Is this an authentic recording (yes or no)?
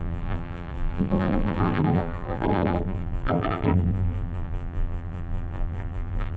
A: no